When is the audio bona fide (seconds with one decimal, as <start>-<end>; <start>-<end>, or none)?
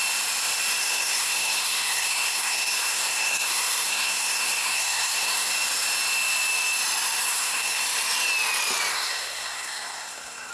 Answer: 0.0-0.8; 5.5-7.2; 7.8-8.9